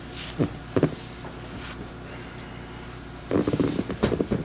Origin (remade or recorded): recorded